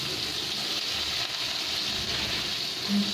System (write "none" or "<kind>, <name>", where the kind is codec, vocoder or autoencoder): none